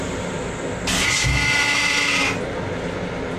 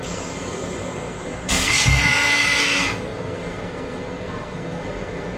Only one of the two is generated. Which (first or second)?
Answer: second